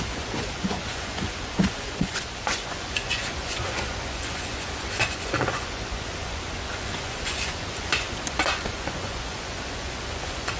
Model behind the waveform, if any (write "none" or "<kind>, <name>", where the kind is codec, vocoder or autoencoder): vocoder, Vocos